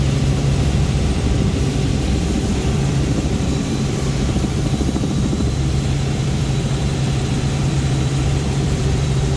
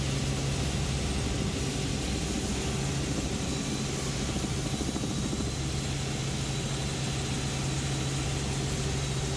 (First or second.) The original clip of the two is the second